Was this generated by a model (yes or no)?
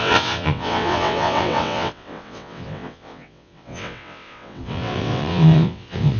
yes